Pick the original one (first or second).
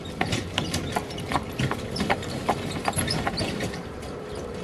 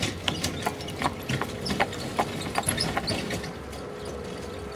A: second